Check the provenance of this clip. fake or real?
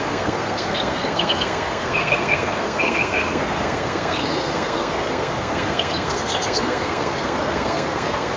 fake